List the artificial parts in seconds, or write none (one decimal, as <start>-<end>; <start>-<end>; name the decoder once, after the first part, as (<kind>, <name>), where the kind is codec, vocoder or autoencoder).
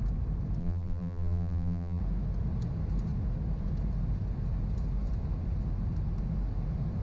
0.6-2.0 (vocoder, BigVGAN v2)